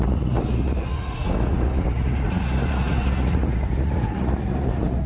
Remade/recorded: remade